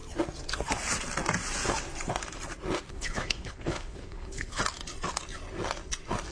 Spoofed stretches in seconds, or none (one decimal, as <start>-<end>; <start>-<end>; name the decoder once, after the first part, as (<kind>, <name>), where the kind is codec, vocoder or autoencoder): 2.9-4.6 (codec, HILCodec)